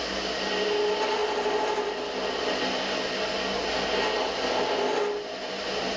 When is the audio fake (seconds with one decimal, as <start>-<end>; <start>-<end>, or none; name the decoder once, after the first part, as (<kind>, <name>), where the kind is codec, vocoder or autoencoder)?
none